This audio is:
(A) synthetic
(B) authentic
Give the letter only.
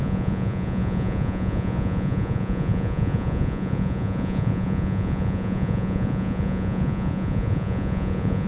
A